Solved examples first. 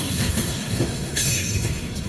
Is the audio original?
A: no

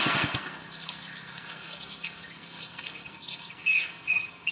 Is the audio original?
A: no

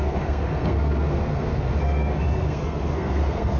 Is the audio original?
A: no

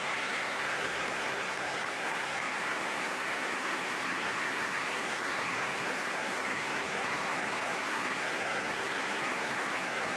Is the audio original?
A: no